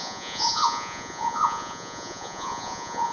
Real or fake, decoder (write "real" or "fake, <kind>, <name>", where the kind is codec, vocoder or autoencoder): fake, vocoder, Vocos